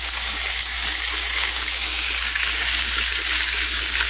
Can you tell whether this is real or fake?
fake